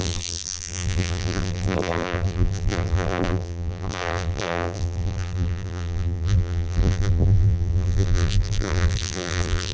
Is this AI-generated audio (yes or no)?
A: yes